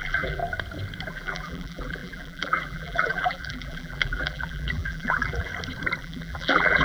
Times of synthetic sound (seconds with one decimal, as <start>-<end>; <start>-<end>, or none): 0.0-0.4; 1.1-5.5; 6.0-6.8

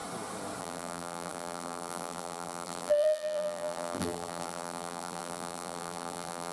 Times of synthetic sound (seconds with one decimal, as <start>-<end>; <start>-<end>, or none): 0.6-6.5

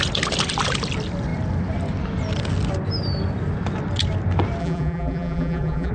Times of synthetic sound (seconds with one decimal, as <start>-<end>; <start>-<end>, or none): 4.6-5.9

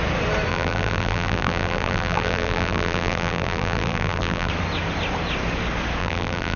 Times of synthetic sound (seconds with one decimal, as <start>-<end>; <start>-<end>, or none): 0.5-4.5; 6.0-6.6